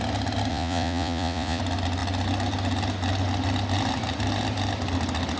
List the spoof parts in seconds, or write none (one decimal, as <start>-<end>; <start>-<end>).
0.5-1.6